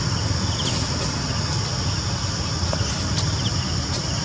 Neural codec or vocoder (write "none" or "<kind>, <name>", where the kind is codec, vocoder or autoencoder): none